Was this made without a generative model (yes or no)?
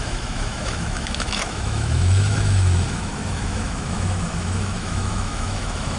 no